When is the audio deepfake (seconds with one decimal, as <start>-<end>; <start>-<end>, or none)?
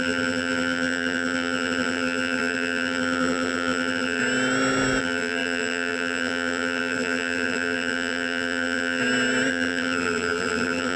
0.0-4.2; 5.0-9.0; 9.5-11.0